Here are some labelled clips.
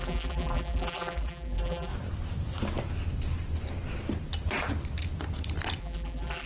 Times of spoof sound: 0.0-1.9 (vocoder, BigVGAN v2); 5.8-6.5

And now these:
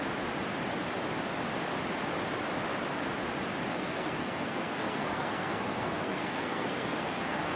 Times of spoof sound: 3.7-7.6 (codec, SNAC)

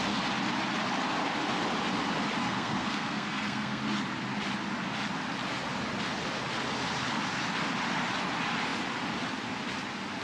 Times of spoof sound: 2.4-3.8 (codec, SNAC)

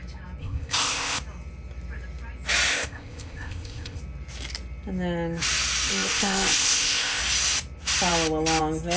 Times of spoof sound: 0.4-1.2 (codec, ZipCodec); 2.7-4.0; 5.9-7.2

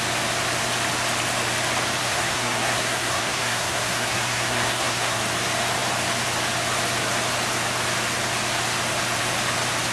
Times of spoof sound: 2.0-5.2 (codec, SNAC)